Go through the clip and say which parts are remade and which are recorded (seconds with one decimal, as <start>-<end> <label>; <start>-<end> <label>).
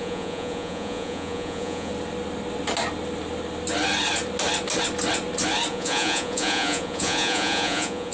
0.0-1.9 remade; 1.9-5.7 recorded; 5.7-8.1 remade